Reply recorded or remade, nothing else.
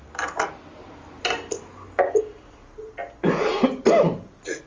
recorded